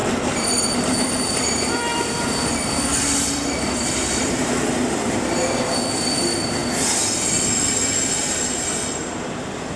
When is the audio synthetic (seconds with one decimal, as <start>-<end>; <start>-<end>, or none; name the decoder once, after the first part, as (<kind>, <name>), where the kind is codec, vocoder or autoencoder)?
0.0-5.1 (vocoder, BigVGAN v2)

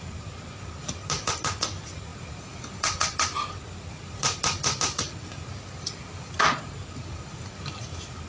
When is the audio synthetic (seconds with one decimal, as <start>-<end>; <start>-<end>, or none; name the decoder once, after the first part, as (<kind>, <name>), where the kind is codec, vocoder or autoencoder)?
none

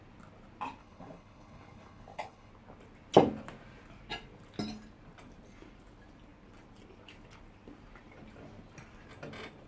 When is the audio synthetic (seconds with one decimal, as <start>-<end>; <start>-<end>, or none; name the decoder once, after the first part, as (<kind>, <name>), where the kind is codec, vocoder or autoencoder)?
0.8-2.5 (codec, HILCodec)

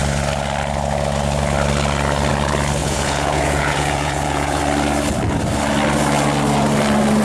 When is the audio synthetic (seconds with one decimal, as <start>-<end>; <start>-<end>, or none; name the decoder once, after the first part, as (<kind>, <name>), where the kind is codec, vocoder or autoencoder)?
2.8-4.6 (vocoder, Vocos)

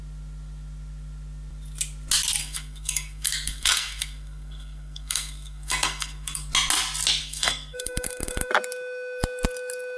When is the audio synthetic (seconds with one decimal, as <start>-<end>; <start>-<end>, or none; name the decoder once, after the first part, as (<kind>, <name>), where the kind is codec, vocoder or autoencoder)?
2.4-6.5 (codec, SNAC); 7.2-8.5

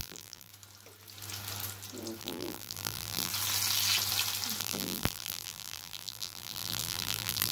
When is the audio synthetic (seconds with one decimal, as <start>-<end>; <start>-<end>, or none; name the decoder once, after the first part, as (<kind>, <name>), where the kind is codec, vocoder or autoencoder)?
0.0-0.5 (vocoder, BigVGAN v2); 2.2-3.3; 4.6-7.5

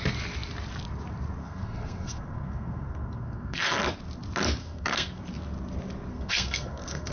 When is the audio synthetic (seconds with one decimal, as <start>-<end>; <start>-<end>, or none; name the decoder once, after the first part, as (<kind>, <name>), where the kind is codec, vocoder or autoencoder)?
1.4-3.6 (codec, SNAC); 4.6-5.2; 6.1-7.1